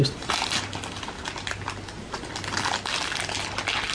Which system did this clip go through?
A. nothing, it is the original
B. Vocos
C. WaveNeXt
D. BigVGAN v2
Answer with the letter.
A